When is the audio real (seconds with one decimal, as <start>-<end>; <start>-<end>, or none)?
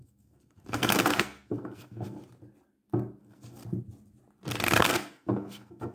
2.2-3.2; 3.6-4.8